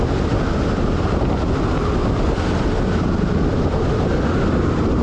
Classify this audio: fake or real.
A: real